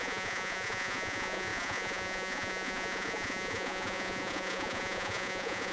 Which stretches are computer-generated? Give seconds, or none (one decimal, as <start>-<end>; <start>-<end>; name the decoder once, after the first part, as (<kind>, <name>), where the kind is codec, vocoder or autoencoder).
0.0-5.7 (vocoder, Vocos)

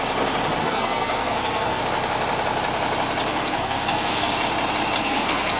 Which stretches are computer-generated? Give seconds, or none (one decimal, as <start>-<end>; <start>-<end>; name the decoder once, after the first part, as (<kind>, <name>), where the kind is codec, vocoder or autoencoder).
0.6-1.8 (codec, SNAC); 3.3-4.3; 5.0-5.6

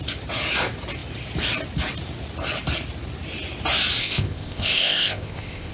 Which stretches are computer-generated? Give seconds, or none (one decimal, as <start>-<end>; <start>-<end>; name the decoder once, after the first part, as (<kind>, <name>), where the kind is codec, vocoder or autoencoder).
4.0-5.7 (codec, ZipCodec)

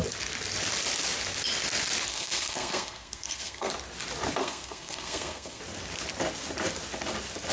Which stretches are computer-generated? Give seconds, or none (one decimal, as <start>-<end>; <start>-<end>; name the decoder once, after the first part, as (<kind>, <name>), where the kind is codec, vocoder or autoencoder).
2.1-3.7 (codec, SNAC); 4.4-5.6

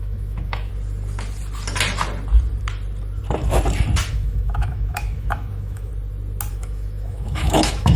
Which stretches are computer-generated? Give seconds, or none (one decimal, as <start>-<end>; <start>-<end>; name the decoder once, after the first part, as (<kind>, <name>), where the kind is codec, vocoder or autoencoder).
0.0-0.7 (autoencoder, DAC-VAE); 4.1-5.9; 6.5-8.0

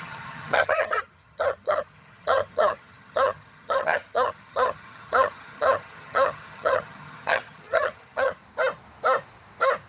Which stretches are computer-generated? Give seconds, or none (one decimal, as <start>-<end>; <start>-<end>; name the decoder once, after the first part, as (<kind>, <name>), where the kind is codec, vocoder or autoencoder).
0.0-8.4 (vocoder, HiFi-GAN)